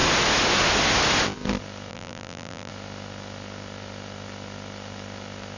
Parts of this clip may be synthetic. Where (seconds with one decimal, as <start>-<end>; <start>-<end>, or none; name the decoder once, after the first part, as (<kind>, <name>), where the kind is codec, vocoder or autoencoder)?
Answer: 1.9-2.7 (vocoder, BigVGAN v2)